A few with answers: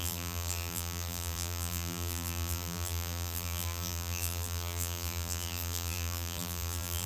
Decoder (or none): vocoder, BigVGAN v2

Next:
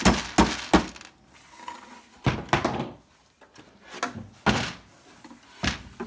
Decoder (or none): none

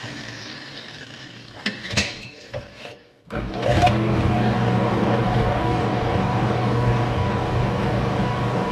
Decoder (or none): codec, DAC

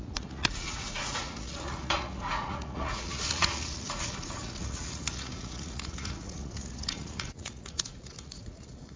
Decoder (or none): vocoder, Vocos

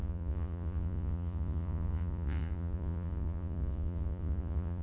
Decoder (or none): vocoder, Vocos